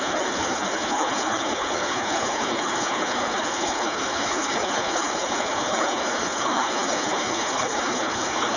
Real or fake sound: fake